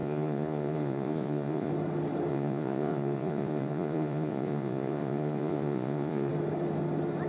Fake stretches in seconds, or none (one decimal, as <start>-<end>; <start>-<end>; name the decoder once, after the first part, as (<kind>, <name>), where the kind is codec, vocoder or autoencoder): 0.0-1.7 (vocoder, Vocos); 2.3-6.3